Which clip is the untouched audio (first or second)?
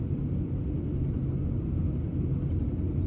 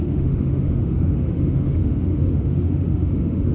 first